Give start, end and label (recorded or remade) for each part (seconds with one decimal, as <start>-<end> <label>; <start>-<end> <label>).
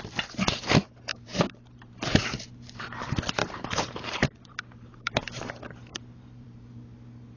0.0-1.1 recorded; 1.1-2.8 remade; 2.8-3.4 recorded; 3.4-5.5 remade; 5.5-5.9 recorded; 5.9-6.7 remade; 6.7-7.4 recorded